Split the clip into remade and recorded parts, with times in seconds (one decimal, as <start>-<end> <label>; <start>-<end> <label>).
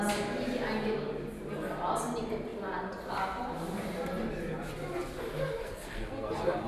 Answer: 0.0-5.6 recorded; 5.6-6.3 remade; 6.3-6.7 recorded